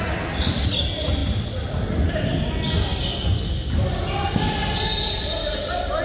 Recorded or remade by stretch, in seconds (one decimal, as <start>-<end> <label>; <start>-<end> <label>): 0.0-1.2 recorded; 1.2-2.1 remade; 2.1-6.0 recorded